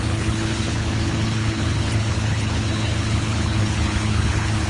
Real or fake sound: fake